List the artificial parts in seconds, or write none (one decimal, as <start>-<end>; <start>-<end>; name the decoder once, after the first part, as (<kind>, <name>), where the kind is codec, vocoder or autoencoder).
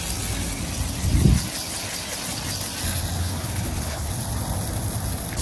3.2-4.1 (codec, HILCodec)